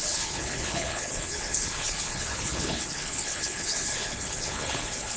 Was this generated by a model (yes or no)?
yes